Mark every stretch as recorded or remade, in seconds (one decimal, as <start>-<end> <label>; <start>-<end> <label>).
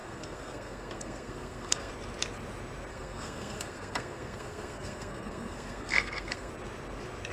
0.0-1.9 remade; 1.9-2.9 recorded; 2.9-6.5 remade; 6.5-7.3 recorded